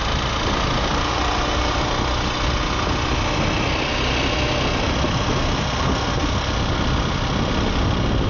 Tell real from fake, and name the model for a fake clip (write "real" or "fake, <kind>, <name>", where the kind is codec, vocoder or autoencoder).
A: real